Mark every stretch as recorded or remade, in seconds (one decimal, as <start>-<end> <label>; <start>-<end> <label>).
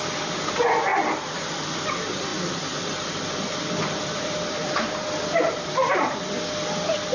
0.0-0.9 recorded; 0.9-1.9 remade; 1.9-3.8 recorded; 3.8-6.3 remade; 6.3-7.1 recorded